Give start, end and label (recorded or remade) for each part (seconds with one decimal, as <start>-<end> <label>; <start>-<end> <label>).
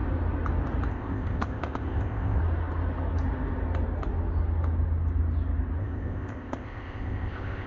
0.0-0.9 recorded; 0.9-2.4 remade; 2.4-5.8 recorded; 5.8-7.7 remade